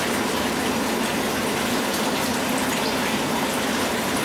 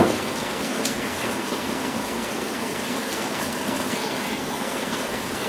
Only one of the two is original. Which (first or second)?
first